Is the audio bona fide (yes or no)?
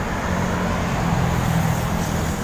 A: yes